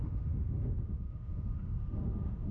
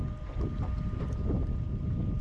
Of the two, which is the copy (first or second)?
first